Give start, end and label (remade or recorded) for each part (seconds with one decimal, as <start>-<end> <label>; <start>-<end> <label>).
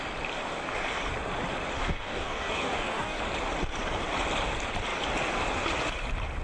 0.0-1.8 recorded; 1.8-3.2 remade; 3.2-6.4 recorded